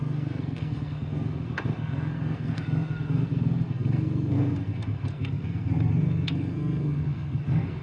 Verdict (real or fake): fake